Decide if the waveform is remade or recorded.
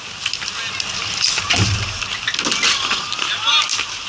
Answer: recorded